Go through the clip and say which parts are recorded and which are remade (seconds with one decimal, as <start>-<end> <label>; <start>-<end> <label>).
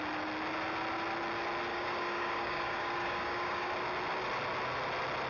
0.0-1.7 recorded; 1.7-3.7 remade; 3.7-5.3 recorded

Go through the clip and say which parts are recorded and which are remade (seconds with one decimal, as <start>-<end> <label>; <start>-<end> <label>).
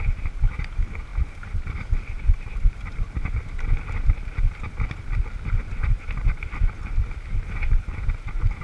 0.0-8.6 recorded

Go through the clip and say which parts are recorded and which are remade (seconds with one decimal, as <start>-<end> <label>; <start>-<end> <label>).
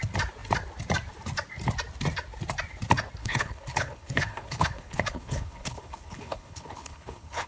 0.0-3.2 recorded; 3.2-7.5 remade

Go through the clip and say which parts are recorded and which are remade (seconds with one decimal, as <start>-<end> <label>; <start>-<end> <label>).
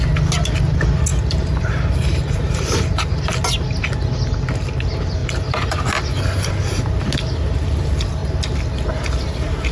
0.0-1.1 recorded; 1.1-3.2 remade; 3.2-5.2 recorded; 5.2-5.8 remade; 5.8-9.7 recorded